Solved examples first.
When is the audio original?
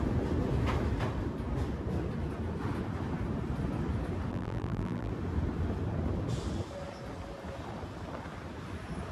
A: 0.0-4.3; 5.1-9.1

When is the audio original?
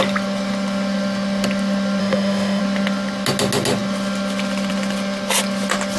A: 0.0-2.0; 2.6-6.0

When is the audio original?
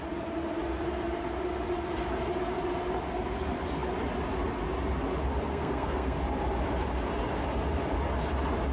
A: 0.0-5.5; 6.2-8.7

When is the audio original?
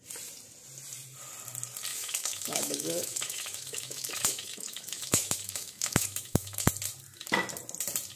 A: 0.0-1.9; 6.7-8.2